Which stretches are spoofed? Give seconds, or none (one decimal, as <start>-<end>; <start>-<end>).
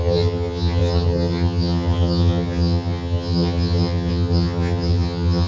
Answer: 0.0-5.5